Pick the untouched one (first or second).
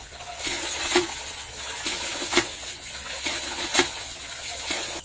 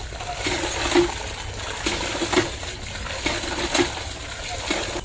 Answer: second